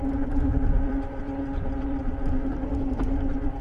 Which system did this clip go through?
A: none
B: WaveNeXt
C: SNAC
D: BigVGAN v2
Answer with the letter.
D